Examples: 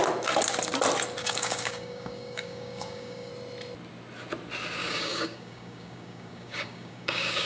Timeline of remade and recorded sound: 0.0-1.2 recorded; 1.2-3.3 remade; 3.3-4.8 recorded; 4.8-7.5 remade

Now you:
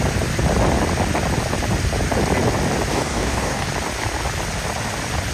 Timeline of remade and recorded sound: 0.0-2.9 recorded; 2.9-3.7 remade; 3.7-5.3 recorded

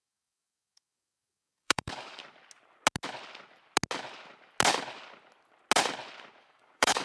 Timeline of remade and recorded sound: 0.0-2.2 remade; 2.2-6.4 recorded; 6.4-7.0 remade

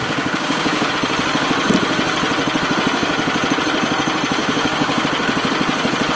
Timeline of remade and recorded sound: 0.0-0.9 remade; 0.9-4.4 recorded; 4.4-5.0 remade; 5.0-6.2 recorded

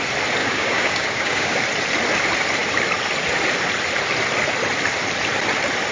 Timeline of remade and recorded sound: 0.0-0.4 recorded; 0.4-1.6 remade; 1.6-5.9 recorded

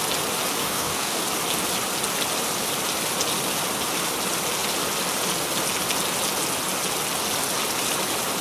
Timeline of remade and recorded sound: 0.0-0.6 recorded; 0.6-1.2 remade; 1.2-8.4 recorded

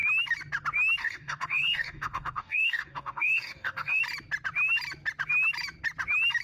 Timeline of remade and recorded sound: 0.0-1.0 recorded; 1.0-4.0 remade; 4.0-6.4 recorded

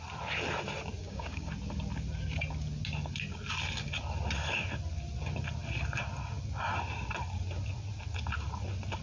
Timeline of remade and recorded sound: 0.0-1.0 recorded; 1.0-1.5 remade; 1.5-9.0 recorded